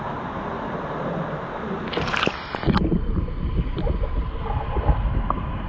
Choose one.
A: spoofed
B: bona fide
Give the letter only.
B